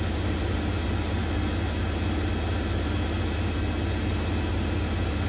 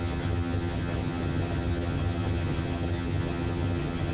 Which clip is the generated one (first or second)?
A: second